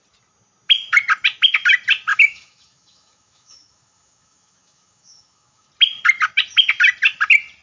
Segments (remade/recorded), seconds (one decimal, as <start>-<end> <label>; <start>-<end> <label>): 0.0-2.1 recorded; 2.1-5.7 remade; 5.7-7.6 recorded